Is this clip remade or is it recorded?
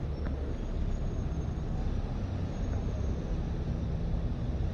recorded